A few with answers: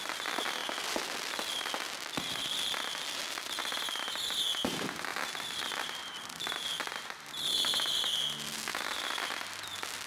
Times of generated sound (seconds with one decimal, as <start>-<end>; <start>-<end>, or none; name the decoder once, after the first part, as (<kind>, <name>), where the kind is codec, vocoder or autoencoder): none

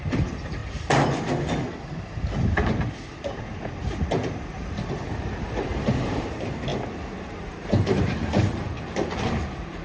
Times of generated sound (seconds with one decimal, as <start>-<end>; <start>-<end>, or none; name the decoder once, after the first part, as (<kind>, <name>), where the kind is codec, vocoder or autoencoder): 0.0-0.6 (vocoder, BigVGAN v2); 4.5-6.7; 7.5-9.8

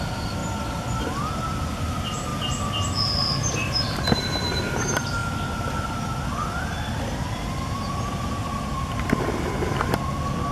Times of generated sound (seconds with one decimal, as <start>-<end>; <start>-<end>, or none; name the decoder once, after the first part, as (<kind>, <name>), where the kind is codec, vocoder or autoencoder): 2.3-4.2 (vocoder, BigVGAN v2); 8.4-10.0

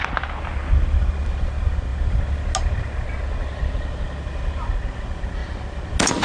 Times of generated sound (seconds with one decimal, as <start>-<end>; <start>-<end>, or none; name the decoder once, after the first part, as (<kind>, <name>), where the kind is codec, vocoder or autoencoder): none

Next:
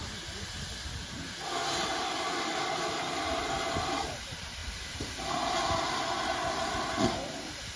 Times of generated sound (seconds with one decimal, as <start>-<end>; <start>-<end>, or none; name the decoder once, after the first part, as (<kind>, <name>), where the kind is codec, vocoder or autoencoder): 4.6-5.1 (vocoder, BigVGAN v2)

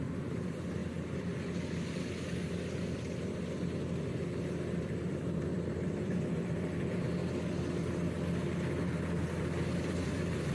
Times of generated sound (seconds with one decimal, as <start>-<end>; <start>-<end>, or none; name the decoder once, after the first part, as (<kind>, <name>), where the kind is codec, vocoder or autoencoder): 0.0-0.8 (vocoder, BigVGAN v2); 4.8-7.2; 9.8-10.5

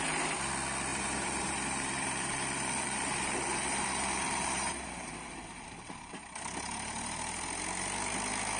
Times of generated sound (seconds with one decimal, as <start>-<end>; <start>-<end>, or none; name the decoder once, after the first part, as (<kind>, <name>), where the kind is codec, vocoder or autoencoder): 0.9-6.1 (vocoder, BigVGAN v2)

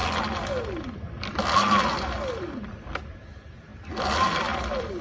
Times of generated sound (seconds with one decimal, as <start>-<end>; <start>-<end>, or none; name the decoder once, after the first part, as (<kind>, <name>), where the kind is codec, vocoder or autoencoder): 2.4-5.0 (vocoder, BigVGAN v2)